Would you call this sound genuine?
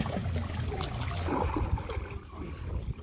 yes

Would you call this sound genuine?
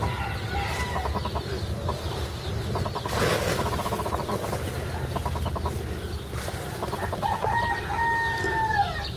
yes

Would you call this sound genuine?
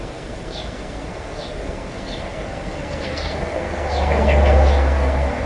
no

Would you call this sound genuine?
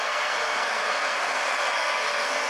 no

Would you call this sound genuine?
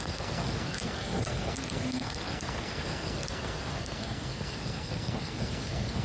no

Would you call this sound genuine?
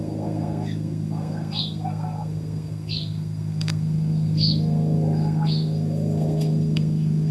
no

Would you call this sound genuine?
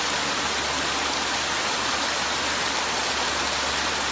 yes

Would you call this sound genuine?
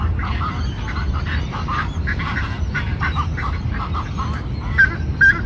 yes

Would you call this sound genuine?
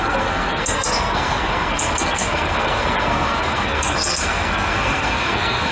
no